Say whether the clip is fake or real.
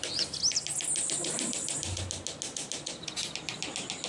real